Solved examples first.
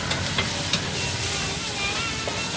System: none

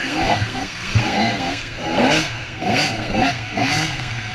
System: codec, SNAC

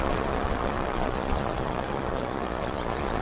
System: vocoder, Vocos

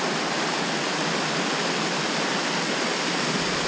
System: none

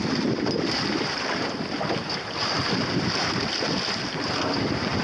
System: none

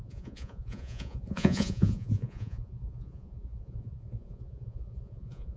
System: vocoder, Vocos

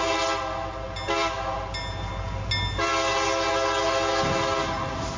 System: none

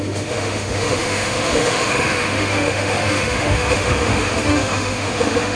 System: autoencoder, DAC-VAE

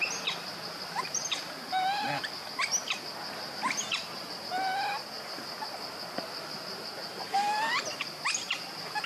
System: none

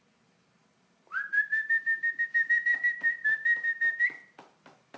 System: none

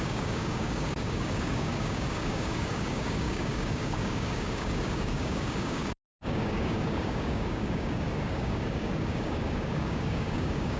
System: codec, DAC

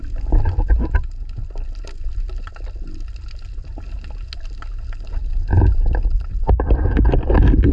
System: none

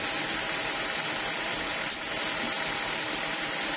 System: none